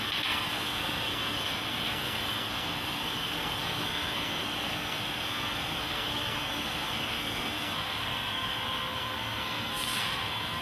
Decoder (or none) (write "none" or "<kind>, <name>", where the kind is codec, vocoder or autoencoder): codec, SNAC